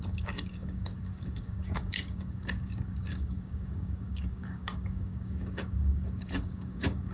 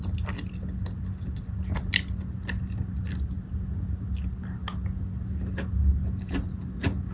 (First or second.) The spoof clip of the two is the first